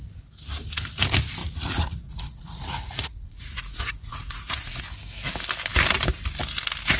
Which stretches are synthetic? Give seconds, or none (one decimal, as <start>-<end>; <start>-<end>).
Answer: 1.4-4.8